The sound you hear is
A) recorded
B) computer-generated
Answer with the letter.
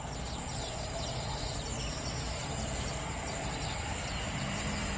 A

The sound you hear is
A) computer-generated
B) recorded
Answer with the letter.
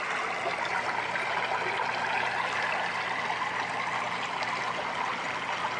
B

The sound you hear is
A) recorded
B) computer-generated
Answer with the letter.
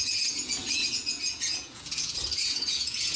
B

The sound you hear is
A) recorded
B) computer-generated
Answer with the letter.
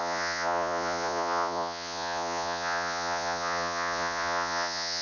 B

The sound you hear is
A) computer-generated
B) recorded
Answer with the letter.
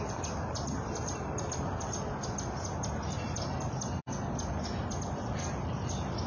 B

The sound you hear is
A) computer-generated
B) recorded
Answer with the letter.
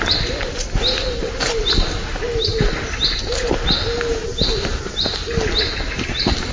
B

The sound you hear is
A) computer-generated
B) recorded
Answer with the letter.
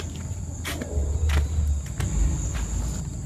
B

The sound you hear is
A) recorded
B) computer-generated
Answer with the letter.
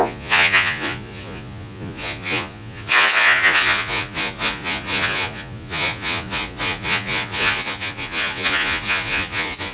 B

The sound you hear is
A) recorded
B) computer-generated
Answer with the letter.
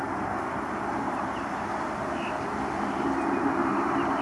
A